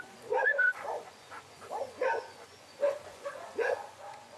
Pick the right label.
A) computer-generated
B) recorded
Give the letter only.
A